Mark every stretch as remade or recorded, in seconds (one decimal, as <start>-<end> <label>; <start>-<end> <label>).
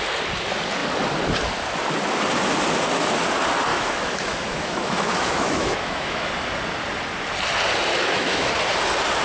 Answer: 0.0-3.7 recorded; 3.7-6.3 remade; 6.3-7.9 recorded; 7.9-8.5 remade; 8.5-9.2 recorded